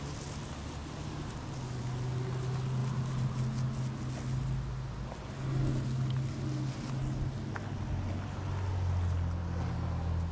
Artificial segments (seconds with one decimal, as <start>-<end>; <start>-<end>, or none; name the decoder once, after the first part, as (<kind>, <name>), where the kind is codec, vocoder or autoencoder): none